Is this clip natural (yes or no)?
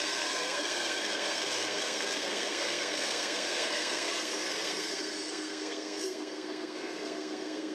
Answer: no